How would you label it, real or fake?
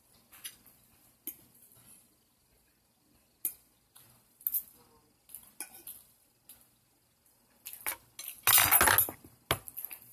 real